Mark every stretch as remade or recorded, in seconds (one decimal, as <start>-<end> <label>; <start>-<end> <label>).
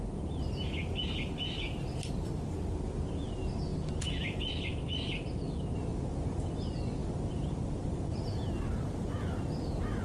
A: 0.0-7.0 recorded; 7.0-9.6 remade; 9.6-10.0 recorded